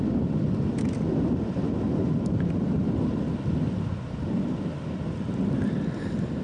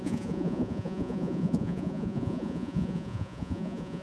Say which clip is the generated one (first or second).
second